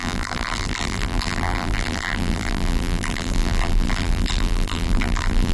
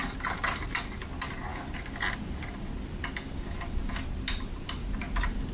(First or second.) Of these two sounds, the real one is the second